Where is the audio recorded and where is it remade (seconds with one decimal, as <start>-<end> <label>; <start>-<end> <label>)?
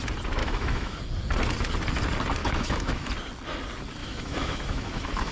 0.0-0.4 recorded; 0.4-1.0 remade; 1.0-2.4 recorded; 2.4-3.1 remade; 3.1-4.0 recorded; 4.0-5.3 remade